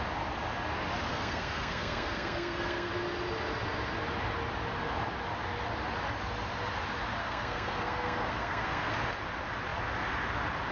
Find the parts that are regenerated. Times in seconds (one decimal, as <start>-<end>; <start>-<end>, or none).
1.1-2.9; 7.2-8.9